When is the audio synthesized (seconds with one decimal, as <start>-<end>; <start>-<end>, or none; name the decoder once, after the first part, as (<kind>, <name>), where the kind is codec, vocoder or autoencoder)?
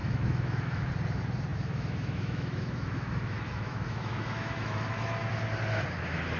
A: 0.0-0.9 (autoencoder, DAC-VAE); 1.5-5.3